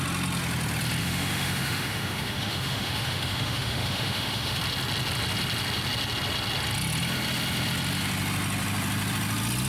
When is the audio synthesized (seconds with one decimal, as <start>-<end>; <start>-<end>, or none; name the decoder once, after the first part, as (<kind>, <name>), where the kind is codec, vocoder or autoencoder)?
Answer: 1.0-4.6 (autoencoder, DAC-VAE)